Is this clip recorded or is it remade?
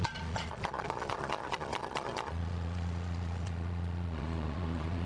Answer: remade